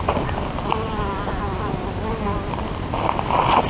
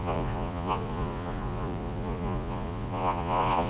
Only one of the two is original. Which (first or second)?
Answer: first